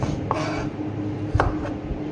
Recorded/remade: recorded